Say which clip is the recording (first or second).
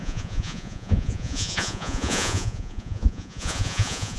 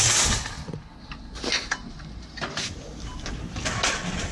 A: second